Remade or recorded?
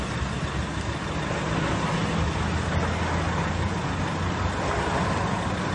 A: recorded